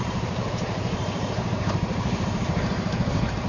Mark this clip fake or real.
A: fake